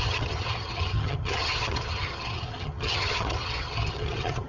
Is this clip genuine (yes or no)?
no